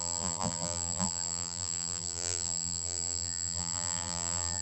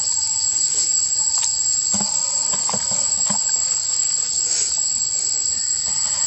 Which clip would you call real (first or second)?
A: second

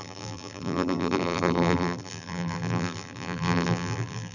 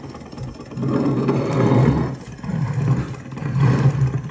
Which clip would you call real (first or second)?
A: second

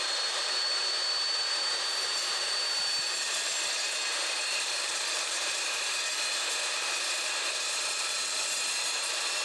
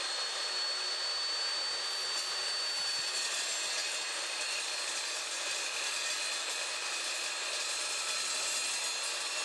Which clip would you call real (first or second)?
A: second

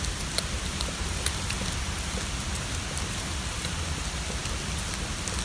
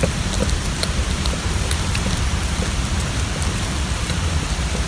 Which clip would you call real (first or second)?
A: first